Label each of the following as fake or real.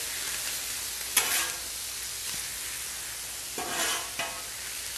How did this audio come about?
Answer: real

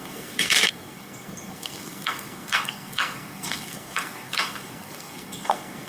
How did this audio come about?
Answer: fake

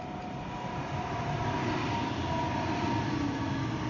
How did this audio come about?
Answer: real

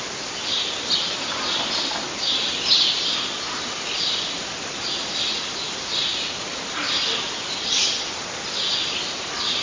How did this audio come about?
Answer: real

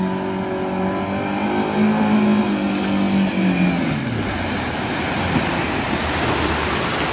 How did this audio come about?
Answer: real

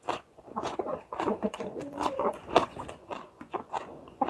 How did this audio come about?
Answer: fake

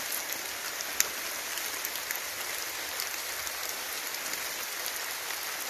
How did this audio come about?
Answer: real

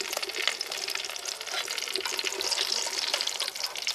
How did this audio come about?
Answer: real